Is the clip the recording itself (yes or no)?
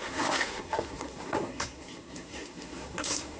no